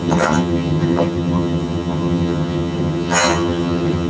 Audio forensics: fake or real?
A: fake